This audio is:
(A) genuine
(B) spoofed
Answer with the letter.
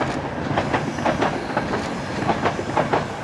A